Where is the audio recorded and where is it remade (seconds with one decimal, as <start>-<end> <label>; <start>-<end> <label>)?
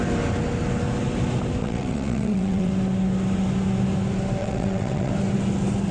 0.0-1.6 recorded; 1.6-2.7 remade; 2.7-4.4 recorded; 4.4-5.1 remade; 5.1-5.9 recorded